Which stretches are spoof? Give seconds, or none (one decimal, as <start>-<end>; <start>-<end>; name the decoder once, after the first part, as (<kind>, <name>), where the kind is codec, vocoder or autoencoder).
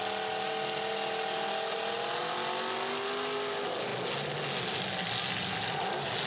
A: none